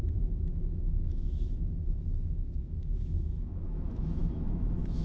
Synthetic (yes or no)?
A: yes